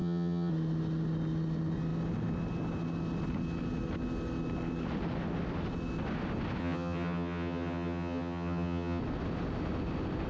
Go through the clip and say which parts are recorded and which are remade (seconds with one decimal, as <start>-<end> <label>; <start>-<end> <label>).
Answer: 0.0-0.5 remade; 0.5-6.6 recorded; 6.6-9.0 remade; 9.0-10.3 recorded